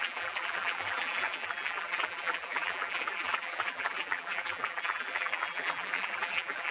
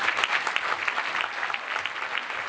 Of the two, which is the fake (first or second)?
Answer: first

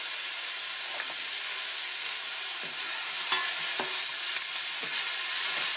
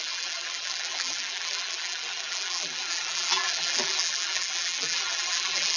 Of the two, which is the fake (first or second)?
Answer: second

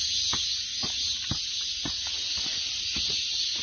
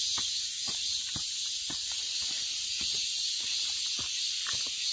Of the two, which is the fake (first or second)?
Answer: second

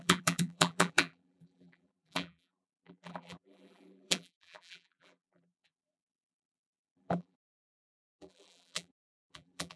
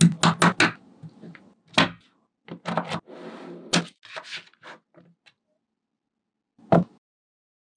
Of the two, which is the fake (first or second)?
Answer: first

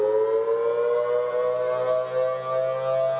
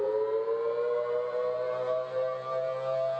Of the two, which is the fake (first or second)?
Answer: second